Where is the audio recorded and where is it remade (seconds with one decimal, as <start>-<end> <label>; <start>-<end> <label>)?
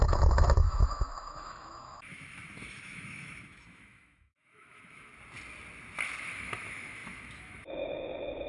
0.0-5.1 remade; 5.1-6.2 recorded; 6.2-8.5 remade